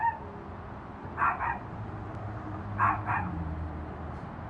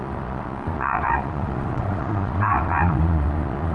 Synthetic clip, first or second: second